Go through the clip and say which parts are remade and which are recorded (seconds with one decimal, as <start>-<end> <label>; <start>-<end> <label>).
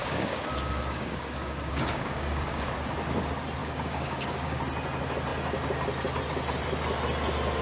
0.0-2.7 remade; 2.7-3.6 recorded; 3.6-4.6 remade; 4.6-7.6 recorded